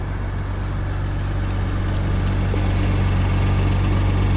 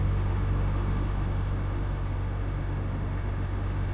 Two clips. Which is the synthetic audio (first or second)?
second